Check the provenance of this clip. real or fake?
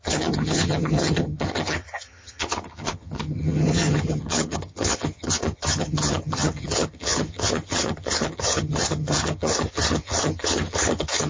fake